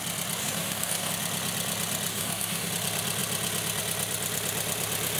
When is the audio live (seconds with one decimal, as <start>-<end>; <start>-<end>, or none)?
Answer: 0.0-0.4; 1.1-2.1; 2.7-5.2